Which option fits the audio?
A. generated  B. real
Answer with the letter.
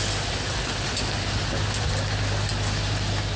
B